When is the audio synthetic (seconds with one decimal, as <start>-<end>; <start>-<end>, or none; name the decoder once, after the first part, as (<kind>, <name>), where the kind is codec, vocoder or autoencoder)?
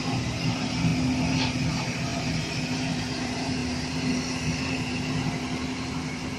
0.0-0.9 (vocoder, BigVGAN v2); 1.7-2.1; 2.9-3.6